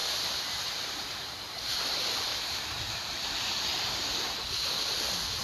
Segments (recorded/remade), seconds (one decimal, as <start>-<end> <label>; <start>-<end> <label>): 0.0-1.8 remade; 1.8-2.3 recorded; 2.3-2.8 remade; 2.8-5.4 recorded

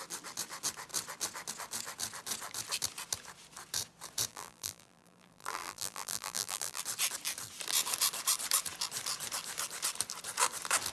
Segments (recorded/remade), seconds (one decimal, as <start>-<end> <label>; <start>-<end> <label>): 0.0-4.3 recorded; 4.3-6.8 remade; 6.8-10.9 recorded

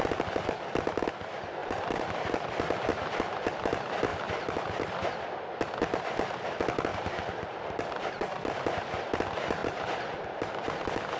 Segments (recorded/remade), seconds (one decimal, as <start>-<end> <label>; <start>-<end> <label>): 0.0-1.6 recorded; 1.6-2.3 remade; 2.3-4.1 recorded; 4.1-5.1 remade; 5.1-6.9 recorded; 6.9-8.6 remade; 8.6-9.6 recorded; 9.6-11.2 remade

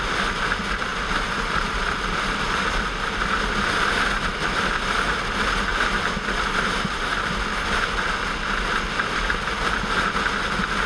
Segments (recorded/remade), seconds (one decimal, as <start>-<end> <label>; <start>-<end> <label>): 0.0-0.9 recorded; 0.9-4.6 remade; 4.6-10.9 recorded